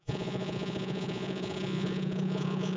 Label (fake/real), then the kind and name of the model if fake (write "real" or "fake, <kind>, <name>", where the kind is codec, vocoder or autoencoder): fake, vocoder, Vocos